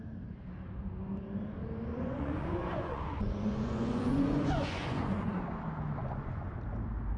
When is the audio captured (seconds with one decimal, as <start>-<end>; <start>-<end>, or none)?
0.0-1.9; 5.4-6.0; 6.5-7.2